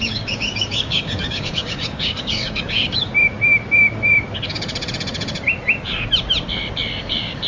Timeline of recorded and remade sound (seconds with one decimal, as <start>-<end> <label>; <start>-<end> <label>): 0.0-3.1 remade; 3.1-7.0 recorded; 7.0-7.5 remade